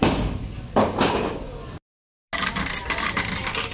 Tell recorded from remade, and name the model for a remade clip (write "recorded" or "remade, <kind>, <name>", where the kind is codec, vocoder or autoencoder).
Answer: recorded